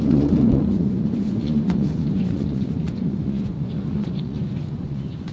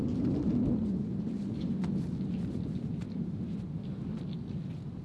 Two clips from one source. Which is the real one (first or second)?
second